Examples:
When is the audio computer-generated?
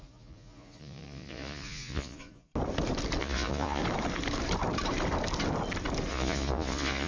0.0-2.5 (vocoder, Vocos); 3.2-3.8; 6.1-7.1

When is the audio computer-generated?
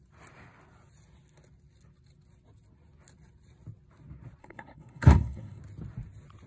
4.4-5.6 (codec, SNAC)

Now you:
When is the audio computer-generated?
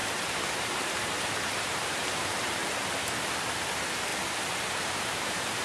0.0-2.6 (vocoder, BigVGAN v2); 3.6-4.1; 4.8-5.6